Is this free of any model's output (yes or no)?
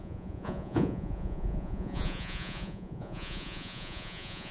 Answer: no